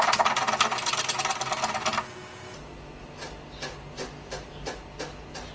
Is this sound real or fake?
real